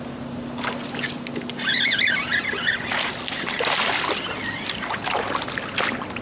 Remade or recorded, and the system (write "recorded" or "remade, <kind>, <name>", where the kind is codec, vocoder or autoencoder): recorded